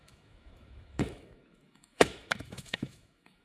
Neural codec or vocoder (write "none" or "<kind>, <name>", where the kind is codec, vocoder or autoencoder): autoencoder, DAC-VAE